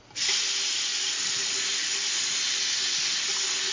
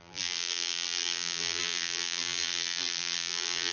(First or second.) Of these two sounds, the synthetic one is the second